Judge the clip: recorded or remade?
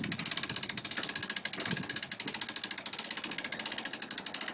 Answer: recorded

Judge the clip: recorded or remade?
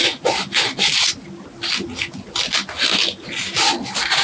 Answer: recorded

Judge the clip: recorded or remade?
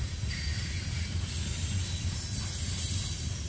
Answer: recorded